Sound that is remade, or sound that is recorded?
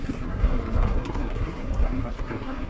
remade